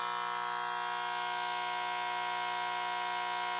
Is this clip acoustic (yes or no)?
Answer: yes